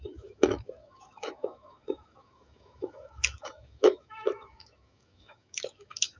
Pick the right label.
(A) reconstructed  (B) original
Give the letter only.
A